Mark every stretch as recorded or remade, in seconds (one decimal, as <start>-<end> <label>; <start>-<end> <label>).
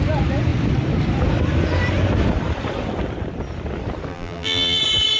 0.0-4.1 recorded; 4.1-4.8 remade; 4.8-5.2 recorded